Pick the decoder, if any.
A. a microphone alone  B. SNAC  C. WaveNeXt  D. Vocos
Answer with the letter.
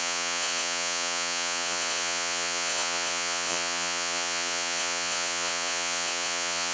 D